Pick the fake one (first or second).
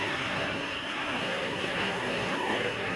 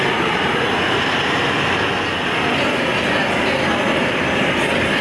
first